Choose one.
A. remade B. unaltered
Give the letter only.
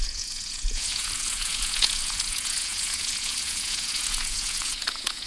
A